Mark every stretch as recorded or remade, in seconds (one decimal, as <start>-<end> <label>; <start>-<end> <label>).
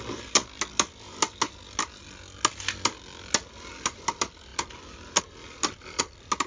0.0-6.5 recorded